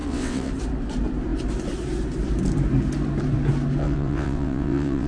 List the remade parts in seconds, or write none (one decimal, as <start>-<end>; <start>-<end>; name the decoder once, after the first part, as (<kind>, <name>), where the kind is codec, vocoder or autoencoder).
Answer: 0.0-0.5 (vocoder, WaveNeXt); 3.8-5.1